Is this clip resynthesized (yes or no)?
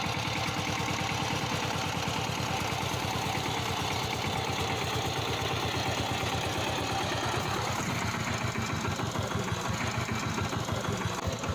no